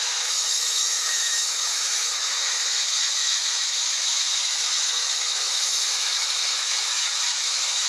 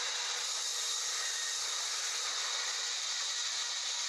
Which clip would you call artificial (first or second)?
first